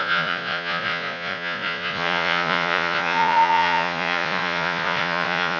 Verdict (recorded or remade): remade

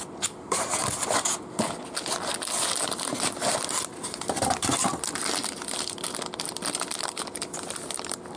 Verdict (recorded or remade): recorded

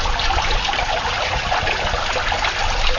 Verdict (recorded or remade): recorded